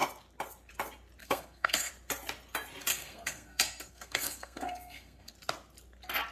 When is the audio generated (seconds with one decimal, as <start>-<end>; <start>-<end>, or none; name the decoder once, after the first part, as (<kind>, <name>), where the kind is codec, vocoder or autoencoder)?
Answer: 1.2-1.9 (codec, SNAC); 2.9-5.3